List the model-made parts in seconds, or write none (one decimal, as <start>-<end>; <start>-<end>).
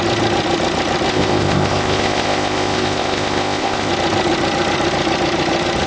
1.1-3.9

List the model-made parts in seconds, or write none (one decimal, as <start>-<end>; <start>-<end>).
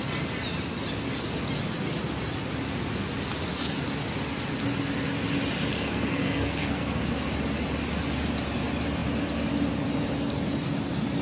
5.7-7.0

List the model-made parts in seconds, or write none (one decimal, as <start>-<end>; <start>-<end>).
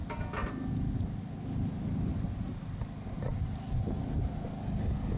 none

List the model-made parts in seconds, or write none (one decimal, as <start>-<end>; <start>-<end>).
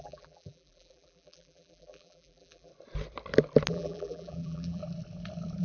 0.0-2.7; 3.7-4.8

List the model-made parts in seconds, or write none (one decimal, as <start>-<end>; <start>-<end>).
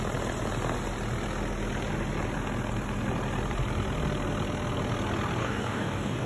5.4-6.3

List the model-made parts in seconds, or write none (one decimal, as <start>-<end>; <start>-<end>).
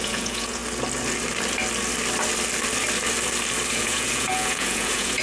0.0-0.6; 3.7-5.2